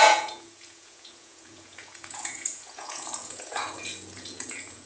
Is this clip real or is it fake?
fake